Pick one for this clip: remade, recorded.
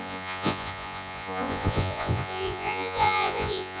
remade